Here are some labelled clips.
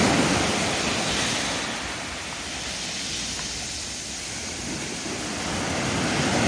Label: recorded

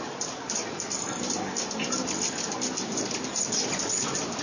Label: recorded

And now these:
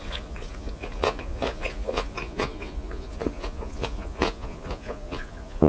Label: remade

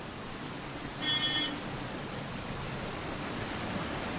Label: remade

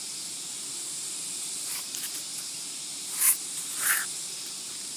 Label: remade